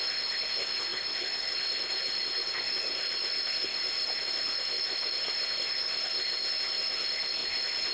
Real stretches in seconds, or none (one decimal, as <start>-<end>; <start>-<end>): none